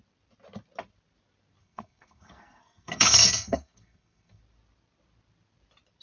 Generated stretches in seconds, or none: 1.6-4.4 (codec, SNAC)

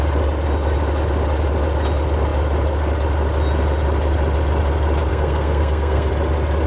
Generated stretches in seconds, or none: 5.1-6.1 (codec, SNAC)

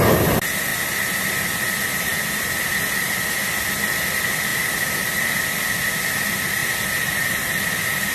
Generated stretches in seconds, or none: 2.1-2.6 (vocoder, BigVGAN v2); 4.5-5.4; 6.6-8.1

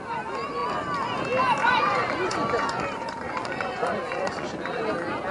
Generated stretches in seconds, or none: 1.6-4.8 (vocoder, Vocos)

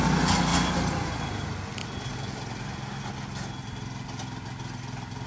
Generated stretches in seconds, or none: none

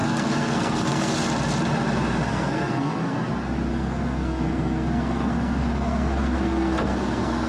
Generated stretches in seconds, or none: 0.0-1.1 (codec, SNAC); 2.3-3.3; 3.7-7.5

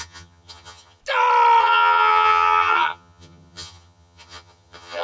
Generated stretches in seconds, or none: 0.0-1.0 (vocoder, HiFi-GAN); 1.6-5.0

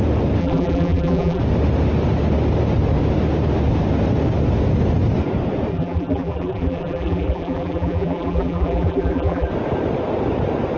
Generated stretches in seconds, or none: 0.4-1.4 (vocoder, BigVGAN v2); 5.7-9.5